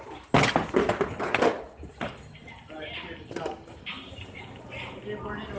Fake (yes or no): no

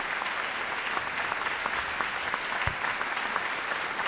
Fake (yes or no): no